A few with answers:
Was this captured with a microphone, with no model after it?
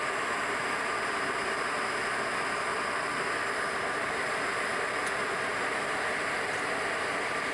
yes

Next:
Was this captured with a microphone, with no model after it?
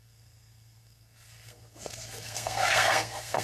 no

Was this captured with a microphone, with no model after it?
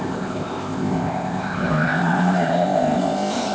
no